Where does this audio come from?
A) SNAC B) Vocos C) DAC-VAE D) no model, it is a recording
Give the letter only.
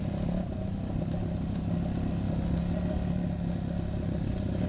D